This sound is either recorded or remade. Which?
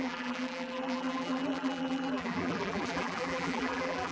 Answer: remade